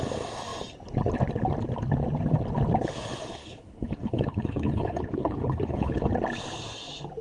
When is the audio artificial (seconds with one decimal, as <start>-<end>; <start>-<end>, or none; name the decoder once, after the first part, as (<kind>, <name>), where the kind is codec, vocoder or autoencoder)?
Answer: 3.4-6.1 (codec, HILCodec)